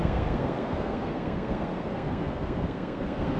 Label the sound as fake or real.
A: fake